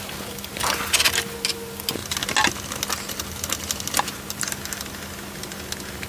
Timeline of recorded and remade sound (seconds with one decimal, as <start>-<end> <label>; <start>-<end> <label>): 0.0-6.1 recorded